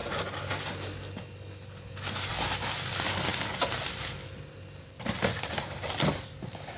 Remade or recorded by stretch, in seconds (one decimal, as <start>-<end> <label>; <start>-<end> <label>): 0.0-6.8 recorded